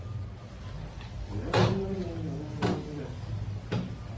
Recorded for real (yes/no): yes